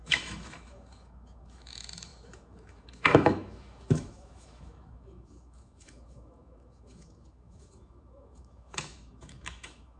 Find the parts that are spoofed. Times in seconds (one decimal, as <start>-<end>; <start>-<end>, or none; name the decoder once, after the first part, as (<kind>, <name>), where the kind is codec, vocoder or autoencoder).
0.0-10.0 (autoencoder, DAC-VAE)